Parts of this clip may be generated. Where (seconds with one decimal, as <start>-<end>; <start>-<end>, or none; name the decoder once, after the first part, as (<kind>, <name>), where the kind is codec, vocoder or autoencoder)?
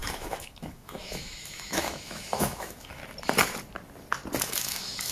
0.0-3.0 (autoencoder, DAC-VAE); 4.4-5.1